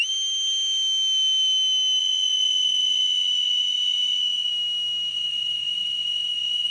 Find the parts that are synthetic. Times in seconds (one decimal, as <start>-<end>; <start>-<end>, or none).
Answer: 2.0-4.5; 5.1-6.7